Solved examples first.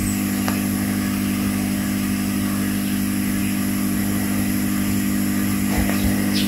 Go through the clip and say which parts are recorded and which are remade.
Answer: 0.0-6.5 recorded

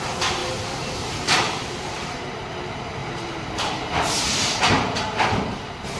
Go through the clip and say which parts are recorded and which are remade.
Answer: 0.0-0.4 recorded; 0.4-2.3 remade; 2.3-3.0 recorded; 3.0-4.2 remade; 4.2-6.0 recorded

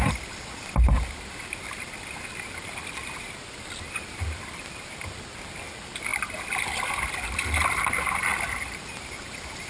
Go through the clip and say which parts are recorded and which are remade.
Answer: 0.0-9.7 recorded

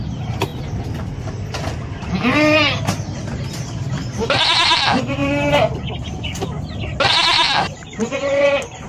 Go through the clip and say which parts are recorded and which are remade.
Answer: 0.0-0.5 remade; 0.5-3.5 recorded; 3.5-5.2 remade; 5.2-7.1 recorded; 7.1-8.9 remade

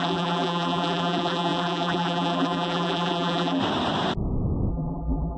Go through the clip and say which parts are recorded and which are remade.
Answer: 0.0-3.6 remade; 3.6-4.7 recorded; 4.7-5.4 remade

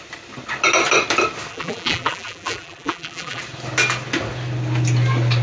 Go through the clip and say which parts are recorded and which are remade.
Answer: 0.0-1.5 recorded; 1.5-3.4 remade; 3.4-5.4 recorded

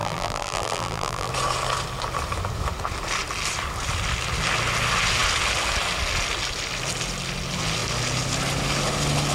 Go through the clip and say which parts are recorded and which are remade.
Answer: 0.0-1.3 remade; 1.3-9.3 recorded